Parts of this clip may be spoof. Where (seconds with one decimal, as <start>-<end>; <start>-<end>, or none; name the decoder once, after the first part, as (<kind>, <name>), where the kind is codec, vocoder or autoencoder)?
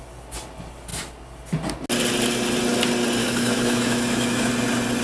3.2-4.5 (autoencoder, DAC-VAE)